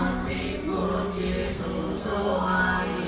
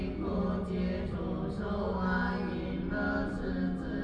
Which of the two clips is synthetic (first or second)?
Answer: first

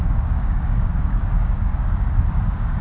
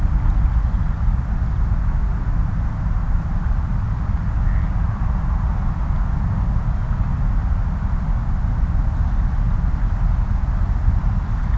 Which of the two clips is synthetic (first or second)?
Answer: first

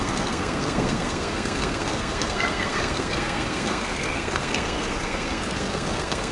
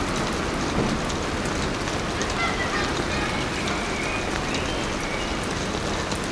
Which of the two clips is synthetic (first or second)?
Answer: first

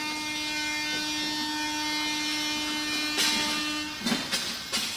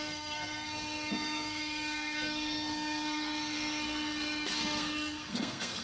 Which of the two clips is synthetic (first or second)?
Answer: second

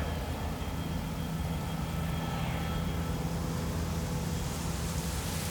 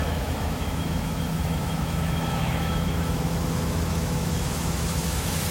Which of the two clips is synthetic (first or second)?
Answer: second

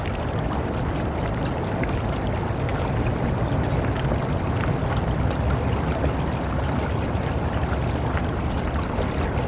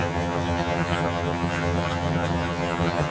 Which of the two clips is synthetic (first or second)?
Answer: second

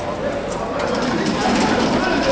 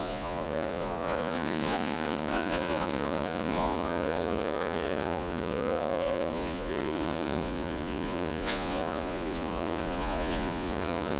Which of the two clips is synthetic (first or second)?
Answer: second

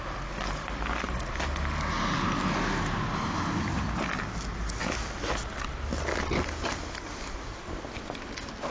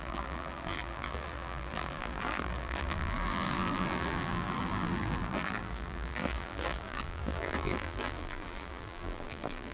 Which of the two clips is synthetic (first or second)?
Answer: second